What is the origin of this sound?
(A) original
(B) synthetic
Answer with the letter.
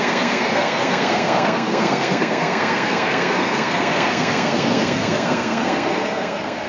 B